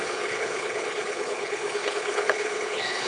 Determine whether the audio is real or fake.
fake